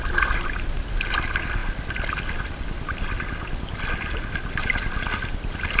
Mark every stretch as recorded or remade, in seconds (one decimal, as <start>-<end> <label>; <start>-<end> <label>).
0.0-5.8 recorded